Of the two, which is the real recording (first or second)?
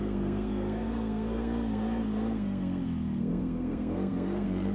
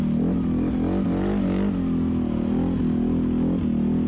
second